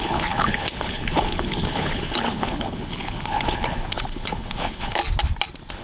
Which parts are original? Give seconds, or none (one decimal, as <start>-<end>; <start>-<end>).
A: 5.0-5.8